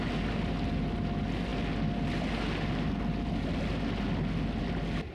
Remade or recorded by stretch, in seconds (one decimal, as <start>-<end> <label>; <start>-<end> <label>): 0.0-5.1 recorded